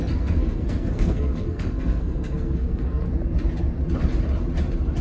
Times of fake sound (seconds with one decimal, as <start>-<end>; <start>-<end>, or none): 0.0-3.0